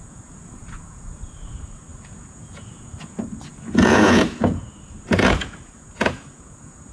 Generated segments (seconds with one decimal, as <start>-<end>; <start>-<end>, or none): 0.0-6.9